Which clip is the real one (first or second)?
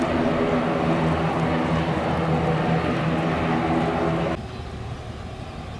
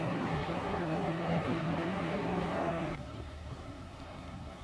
first